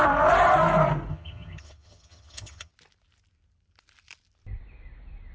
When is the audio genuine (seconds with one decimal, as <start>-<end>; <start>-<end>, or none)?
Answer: 0.0-1.1; 2.7-5.3